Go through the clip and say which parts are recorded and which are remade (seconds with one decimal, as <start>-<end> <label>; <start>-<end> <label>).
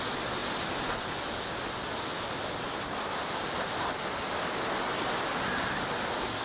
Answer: 0.0-6.4 recorded